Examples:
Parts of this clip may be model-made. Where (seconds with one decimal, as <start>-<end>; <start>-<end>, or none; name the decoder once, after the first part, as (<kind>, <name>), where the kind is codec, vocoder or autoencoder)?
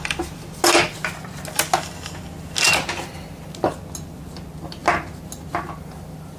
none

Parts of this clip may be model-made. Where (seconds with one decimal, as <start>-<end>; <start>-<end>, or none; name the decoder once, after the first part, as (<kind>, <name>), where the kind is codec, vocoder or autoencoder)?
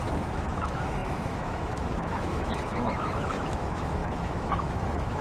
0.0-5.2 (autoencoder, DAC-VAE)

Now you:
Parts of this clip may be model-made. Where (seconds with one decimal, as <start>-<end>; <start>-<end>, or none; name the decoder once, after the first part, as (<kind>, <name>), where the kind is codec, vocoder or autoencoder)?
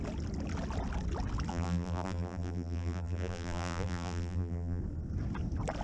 1.5-4.8 (vocoder, BigVGAN v2)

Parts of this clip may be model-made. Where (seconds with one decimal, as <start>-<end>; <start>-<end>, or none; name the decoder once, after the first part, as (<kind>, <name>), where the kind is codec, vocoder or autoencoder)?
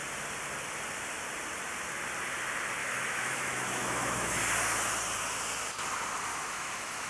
2.8-4.4 (autoencoder, DAC-VAE); 6.3-7.1